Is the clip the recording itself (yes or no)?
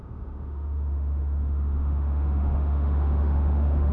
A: no